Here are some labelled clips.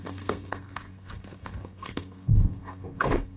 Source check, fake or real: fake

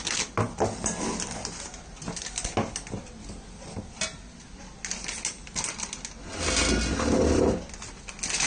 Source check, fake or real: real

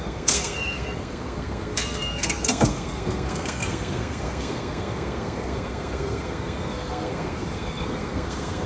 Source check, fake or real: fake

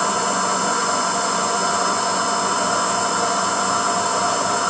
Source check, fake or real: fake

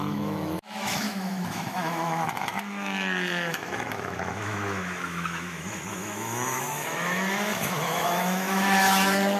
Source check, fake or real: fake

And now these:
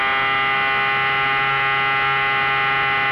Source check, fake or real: real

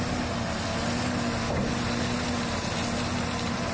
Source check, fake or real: real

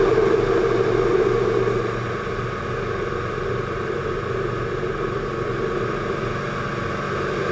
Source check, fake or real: real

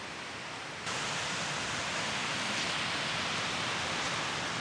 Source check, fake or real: real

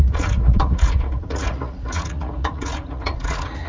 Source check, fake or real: fake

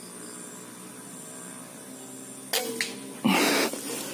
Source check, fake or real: real